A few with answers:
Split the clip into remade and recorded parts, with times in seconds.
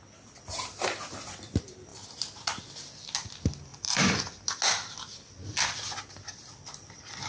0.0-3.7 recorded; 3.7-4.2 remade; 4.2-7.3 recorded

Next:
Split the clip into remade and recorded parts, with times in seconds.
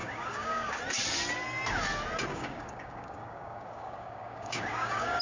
0.0-0.8 remade; 0.8-2.3 recorded; 2.3-5.2 remade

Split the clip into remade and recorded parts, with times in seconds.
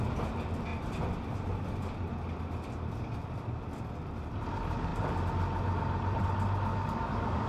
0.0-6.7 recorded; 6.7-7.5 remade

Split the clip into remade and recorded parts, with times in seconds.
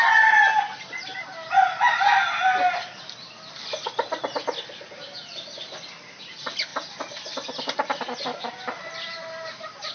0.0-9.9 recorded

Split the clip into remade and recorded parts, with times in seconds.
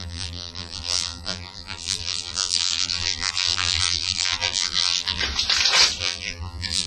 0.0-5.2 remade; 5.2-6.0 recorded; 6.0-6.9 remade